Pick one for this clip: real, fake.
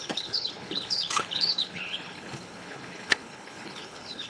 fake